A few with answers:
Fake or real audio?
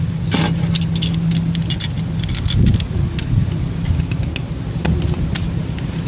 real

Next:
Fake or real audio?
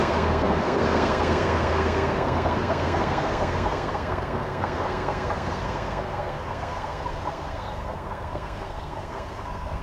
fake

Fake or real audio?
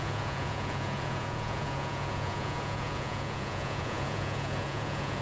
fake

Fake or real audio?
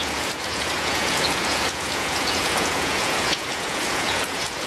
fake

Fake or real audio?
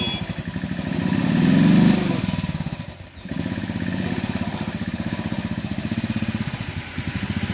real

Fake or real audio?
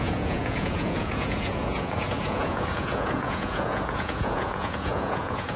fake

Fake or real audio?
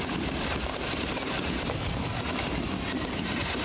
fake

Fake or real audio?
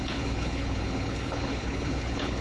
fake